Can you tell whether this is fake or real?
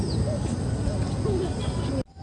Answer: real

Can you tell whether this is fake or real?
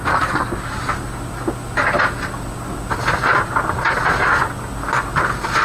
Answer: real